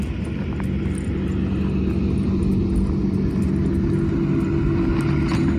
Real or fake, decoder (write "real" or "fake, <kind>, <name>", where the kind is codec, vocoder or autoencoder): real